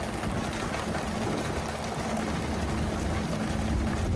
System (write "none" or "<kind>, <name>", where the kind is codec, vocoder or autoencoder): none